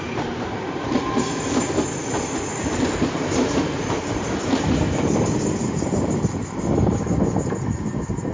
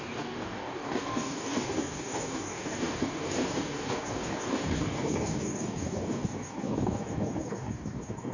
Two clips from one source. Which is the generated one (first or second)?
second